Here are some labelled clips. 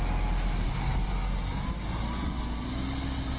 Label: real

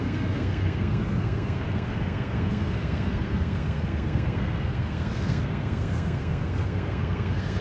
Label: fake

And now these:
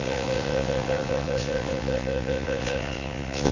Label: fake